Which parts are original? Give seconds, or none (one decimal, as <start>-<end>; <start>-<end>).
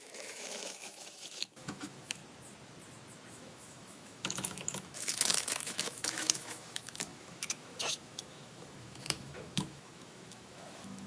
2.2-3.3